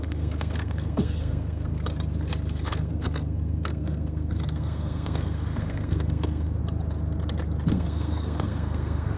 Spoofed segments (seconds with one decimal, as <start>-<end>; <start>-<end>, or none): 0.0-1.7; 2.7-6.6; 7.7-9.2